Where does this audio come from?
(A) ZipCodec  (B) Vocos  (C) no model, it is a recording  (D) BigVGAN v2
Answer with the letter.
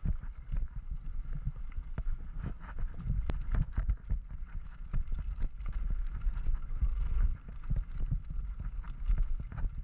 C